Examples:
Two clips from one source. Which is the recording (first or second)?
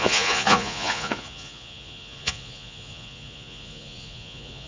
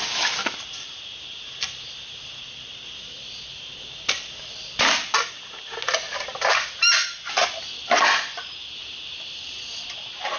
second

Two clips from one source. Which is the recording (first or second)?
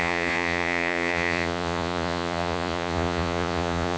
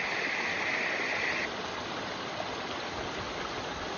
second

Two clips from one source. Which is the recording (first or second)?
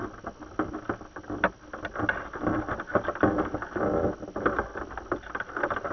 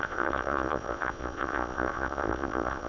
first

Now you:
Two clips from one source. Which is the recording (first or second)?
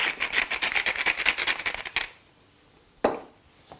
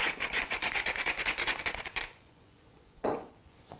first